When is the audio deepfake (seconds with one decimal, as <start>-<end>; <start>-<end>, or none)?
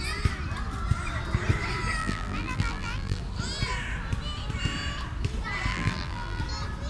2.0-3.2; 5.7-6.4